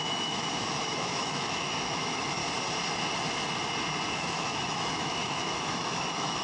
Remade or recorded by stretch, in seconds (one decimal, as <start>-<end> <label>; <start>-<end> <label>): 0.0-2.4 remade; 2.4-4.1 recorded; 4.1-6.4 remade